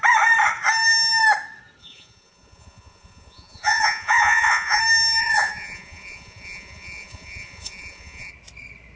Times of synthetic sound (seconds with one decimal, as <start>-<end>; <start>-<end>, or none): 1.8-4.8; 5.2-8.3